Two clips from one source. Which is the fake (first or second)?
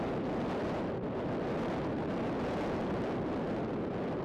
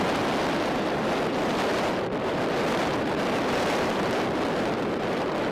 second